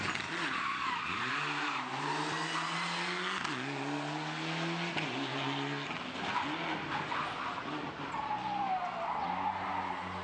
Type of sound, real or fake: real